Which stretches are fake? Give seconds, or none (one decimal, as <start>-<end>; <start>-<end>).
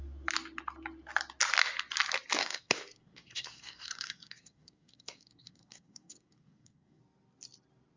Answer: 2.4-7.0